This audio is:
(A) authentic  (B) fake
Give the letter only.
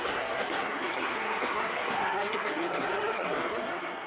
B